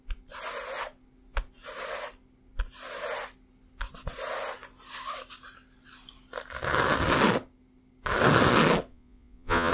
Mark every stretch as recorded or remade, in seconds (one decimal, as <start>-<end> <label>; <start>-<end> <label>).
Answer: 0.0-8.9 recorded; 8.9-9.7 remade